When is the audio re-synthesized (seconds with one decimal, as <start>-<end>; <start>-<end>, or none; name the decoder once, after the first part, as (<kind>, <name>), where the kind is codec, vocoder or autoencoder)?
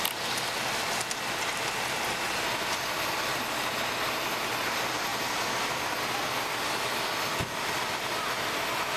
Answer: none